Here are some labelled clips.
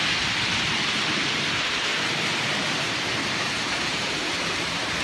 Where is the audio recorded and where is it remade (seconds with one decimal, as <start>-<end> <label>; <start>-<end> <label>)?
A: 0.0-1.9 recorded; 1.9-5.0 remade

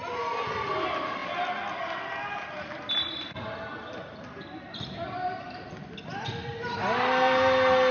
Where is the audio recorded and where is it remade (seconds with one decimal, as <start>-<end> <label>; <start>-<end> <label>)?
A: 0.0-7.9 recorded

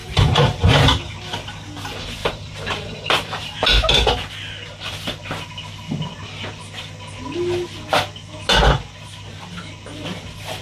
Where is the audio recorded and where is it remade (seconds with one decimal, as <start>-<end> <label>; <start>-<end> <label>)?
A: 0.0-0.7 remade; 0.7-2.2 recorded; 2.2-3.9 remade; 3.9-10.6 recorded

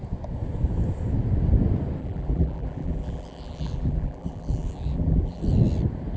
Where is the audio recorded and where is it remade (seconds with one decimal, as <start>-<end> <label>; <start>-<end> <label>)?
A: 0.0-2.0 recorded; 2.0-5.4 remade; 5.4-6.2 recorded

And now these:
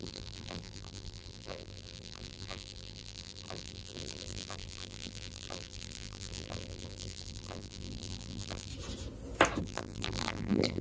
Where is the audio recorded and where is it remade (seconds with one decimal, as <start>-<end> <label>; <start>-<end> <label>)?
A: 0.0-8.7 remade; 8.7-9.6 recorded; 9.6-10.8 remade

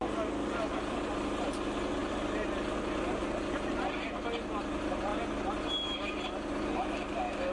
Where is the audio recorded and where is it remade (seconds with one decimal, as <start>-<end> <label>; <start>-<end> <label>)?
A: 0.0-7.5 recorded

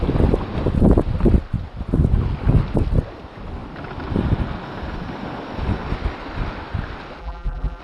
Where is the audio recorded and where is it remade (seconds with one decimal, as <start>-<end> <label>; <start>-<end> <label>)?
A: 0.0-7.2 recorded; 7.2-7.8 remade